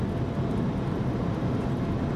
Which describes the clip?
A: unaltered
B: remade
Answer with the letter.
A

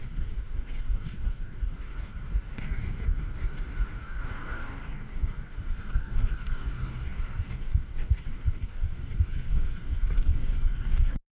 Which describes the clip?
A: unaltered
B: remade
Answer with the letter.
B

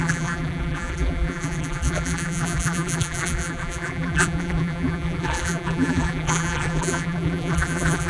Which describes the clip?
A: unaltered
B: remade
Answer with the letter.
B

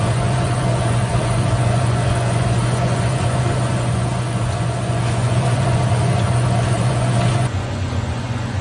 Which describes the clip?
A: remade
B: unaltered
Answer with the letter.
A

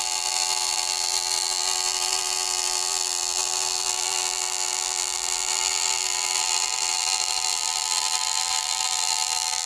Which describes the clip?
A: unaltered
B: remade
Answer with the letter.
B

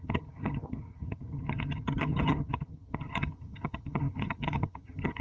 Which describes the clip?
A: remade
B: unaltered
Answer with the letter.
A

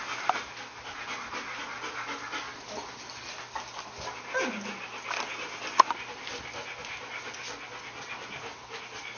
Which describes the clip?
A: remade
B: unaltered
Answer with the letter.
B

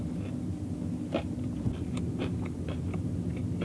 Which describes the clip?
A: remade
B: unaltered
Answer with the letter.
B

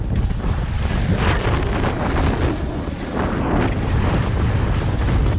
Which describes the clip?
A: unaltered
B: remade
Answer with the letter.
A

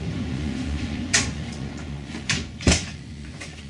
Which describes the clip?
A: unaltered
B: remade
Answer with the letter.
B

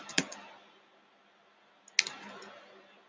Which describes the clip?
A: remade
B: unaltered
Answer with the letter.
B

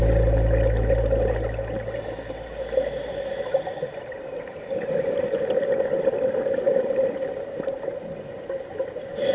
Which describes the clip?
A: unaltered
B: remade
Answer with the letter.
A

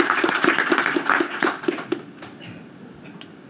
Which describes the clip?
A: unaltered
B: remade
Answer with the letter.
B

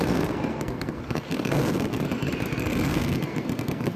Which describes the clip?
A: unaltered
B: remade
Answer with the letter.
B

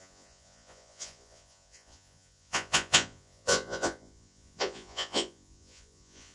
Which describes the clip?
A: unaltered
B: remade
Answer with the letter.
B